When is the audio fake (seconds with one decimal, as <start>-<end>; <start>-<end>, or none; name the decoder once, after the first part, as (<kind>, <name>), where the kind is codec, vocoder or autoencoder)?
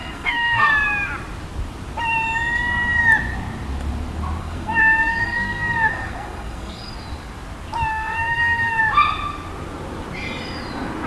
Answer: 0.0-0.7 (codec, SNAC); 4.4-6.9; 7.9-8.8